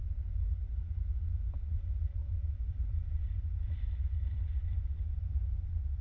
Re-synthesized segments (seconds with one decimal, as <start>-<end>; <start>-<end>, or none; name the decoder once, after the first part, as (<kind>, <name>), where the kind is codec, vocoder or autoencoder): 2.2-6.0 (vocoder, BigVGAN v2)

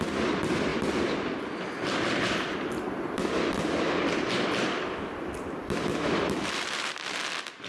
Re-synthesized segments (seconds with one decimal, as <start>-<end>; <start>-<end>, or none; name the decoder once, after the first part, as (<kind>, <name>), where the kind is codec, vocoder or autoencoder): 0.0-0.7 (vocoder, BigVGAN v2); 1.3-7.7

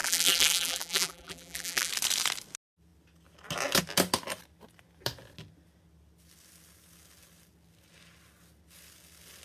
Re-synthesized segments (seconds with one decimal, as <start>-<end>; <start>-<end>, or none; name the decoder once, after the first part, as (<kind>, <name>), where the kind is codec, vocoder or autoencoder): 0.0-1.9 (vocoder, BigVGAN v2)

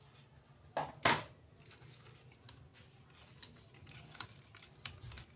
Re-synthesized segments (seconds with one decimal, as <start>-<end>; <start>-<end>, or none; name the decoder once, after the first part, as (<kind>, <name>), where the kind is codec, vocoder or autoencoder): none

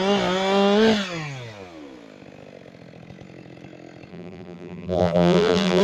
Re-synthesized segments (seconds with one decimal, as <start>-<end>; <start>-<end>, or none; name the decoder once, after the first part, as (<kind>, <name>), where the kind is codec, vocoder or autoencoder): 4.1-5.8 (vocoder, BigVGAN v2)

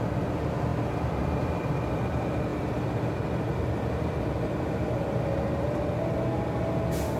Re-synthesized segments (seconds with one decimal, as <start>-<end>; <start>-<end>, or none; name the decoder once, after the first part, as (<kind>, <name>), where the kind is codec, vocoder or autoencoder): 0.7-1.7 (vocoder, BigVGAN v2); 2.5-3.1

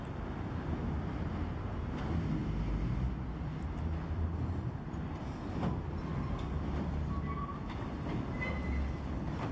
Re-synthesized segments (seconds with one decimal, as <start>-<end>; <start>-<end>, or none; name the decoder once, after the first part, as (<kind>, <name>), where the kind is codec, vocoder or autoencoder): none